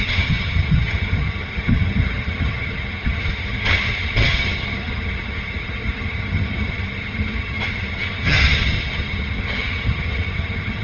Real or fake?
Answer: fake